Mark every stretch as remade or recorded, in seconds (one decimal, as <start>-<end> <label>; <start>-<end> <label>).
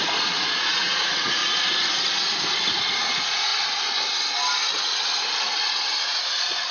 0.0-1.4 remade; 1.4-2.5 recorded; 2.5-3.5 remade; 3.5-6.0 recorded; 6.0-6.7 remade